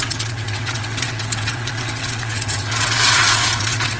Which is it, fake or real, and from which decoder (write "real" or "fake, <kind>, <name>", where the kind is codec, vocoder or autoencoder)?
fake, vocoder, WaveNeXt